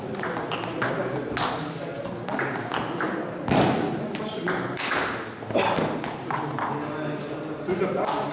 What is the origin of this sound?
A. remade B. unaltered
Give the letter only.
B